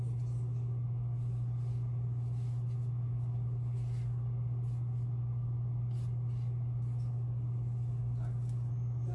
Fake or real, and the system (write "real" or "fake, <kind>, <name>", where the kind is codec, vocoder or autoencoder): real